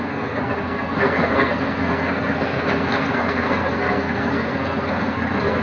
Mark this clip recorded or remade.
remade